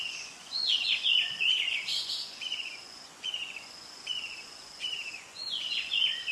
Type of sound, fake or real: fake